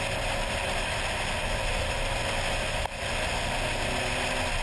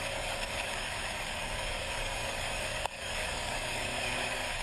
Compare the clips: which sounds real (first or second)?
first